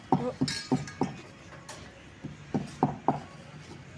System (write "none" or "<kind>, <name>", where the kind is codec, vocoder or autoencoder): none